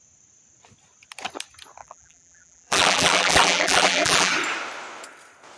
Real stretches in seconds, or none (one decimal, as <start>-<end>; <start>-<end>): 0.0-1.8; 4.3-5.6